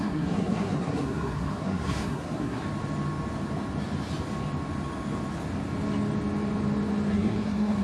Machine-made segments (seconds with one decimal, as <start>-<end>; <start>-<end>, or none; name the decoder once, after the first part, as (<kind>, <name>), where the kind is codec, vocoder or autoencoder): 0.0-2.6 (codec, SNAC); 7.1-7.8